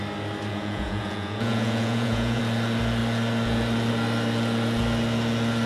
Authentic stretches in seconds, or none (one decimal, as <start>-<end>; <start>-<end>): 0.0-0.5; 2.4-5.7